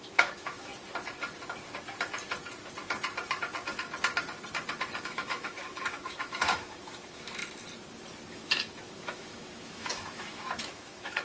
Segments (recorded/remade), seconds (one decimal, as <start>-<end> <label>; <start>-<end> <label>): 0.0-0.7 remade; 0.7-5.0 recorded; 5.0-7.4 remade; 7.4-8.3 recorded; 8.3-11.2 remade

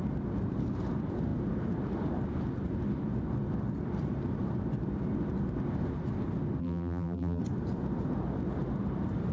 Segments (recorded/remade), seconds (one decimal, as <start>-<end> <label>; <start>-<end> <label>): 0.0-6.6 recorded; 6.6-7.4 remade; 7.4-9.3 recorded